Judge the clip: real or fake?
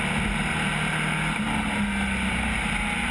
real